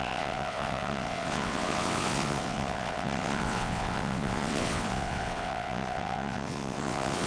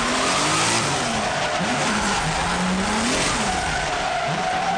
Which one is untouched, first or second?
second